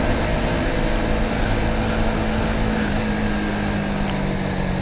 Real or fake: real